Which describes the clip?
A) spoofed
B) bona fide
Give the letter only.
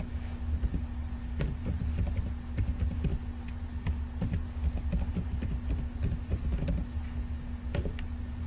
B